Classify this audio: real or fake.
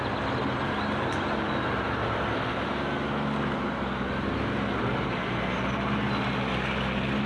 real